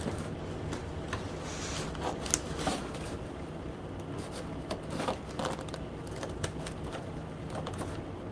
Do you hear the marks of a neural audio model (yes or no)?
no